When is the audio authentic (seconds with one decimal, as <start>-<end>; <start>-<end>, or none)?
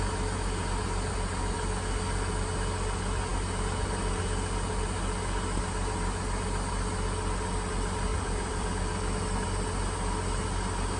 0.0-8.1; 8.7-11.0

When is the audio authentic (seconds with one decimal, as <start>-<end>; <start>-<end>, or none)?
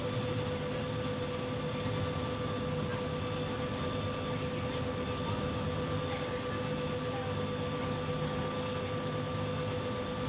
0.0-10.3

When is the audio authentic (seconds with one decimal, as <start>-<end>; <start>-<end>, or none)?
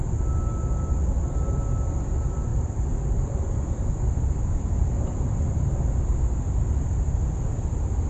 0.0-2.5; 5.1-8.1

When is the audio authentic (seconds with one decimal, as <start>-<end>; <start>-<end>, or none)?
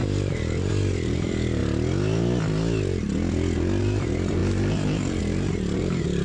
1.6-3.8